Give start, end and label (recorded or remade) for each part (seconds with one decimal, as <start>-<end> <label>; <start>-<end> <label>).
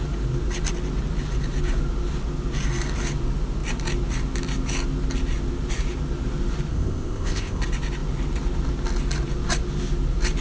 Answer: 0.0-6.7 recorded; 6.7-7.6 remade; 7.6-10.4 recorded